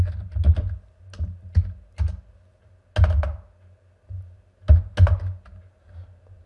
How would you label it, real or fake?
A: real